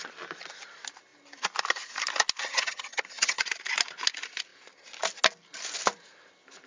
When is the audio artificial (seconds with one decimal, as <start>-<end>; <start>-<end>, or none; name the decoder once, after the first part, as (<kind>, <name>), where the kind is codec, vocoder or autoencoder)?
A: 2.4-3.4 (vocoder, HiFi-GAN)